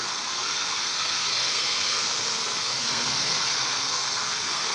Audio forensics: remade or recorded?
remade